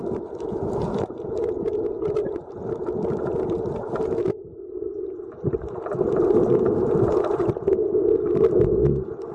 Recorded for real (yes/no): yes